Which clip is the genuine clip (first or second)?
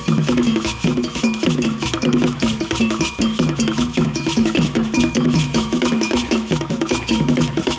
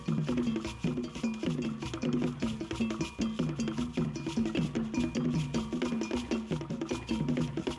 second